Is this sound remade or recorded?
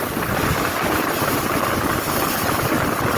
recorded